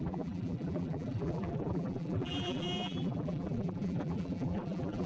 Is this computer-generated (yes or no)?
yes